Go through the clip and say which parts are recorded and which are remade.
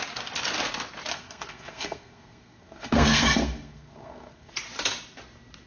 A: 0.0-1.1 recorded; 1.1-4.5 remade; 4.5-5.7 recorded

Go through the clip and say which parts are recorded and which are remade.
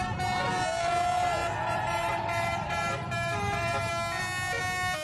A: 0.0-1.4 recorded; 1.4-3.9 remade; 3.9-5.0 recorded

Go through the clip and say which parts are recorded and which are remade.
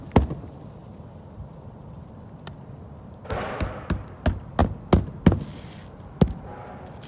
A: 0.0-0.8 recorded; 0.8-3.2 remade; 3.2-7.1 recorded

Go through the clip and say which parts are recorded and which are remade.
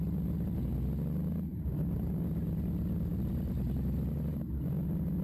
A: 0.0-1.5 recorded; 1.5-2.5 remade; 2.5-3.1 recorded; 3.1-4.4 remade; 4.4-5.2 recorded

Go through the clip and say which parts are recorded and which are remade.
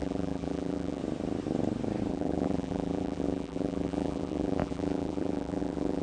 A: 0.0-1.0 remade; 1.0-2.1 recorded; 2.1-6.0 remade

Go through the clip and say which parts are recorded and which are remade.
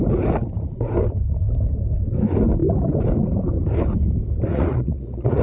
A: 0.0-4.5 recorded; 4.5-5.4 remade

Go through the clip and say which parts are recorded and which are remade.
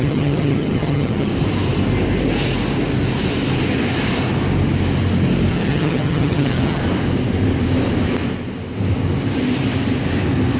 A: 0.0-1.3 remade; 1.3-5.5 recorded; 5.5-6.8 remade; 6.8-10.6 recorded